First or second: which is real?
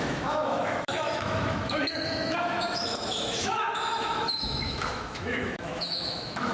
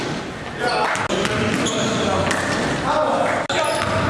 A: second